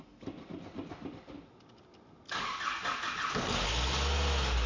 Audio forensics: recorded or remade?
recorded